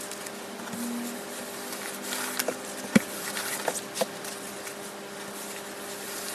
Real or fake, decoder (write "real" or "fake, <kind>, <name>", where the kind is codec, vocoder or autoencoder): real